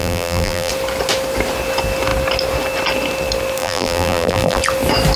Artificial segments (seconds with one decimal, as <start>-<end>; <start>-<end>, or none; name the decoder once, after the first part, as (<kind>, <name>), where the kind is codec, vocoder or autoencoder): 0.0-0.7 (vocoder, BigVGAN v2); 3.6-4.6